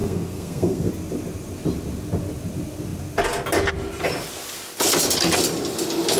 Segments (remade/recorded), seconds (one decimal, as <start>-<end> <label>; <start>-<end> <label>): 0.0-0.9 remade; 0.9-6.2 recorded